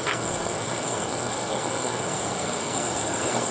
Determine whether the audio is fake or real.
fake